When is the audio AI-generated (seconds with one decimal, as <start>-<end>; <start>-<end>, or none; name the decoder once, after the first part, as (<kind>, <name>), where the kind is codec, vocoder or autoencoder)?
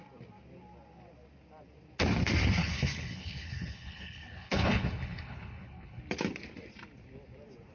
2.6-6.0 (codec, HILCodec)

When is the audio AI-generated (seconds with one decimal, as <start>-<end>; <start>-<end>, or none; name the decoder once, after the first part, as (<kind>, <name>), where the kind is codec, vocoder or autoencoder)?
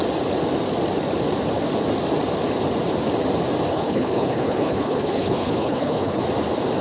3.7-6.2 (codec, HILCodec)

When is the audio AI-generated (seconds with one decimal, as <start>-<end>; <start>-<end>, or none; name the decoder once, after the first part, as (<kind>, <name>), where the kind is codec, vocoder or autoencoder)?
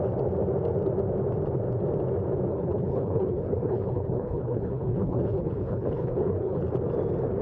2.5-6.6 (codec, HILCodec)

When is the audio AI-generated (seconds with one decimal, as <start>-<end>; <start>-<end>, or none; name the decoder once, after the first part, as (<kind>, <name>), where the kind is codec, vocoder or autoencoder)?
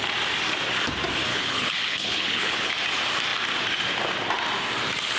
1.3-2.7 (codec, HILCodec)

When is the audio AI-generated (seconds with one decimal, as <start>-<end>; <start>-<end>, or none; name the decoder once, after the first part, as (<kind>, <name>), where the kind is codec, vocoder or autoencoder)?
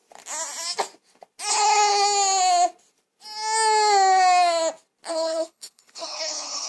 1.5-1.9 (codec, HILCodec); 5.1-6.7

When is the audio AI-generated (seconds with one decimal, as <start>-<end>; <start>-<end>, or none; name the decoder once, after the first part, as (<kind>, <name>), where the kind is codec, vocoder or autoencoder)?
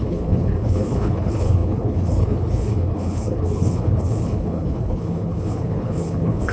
0.0-6.5 (codec, HILCodec)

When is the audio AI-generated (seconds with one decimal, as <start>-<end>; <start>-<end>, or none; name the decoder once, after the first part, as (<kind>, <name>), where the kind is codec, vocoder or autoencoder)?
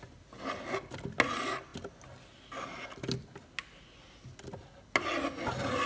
none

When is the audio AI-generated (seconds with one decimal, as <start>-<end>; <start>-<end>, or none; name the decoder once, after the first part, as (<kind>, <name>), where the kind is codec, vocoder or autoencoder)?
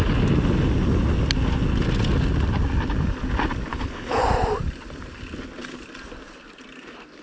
3.7-4.2 (codec, HILCodec)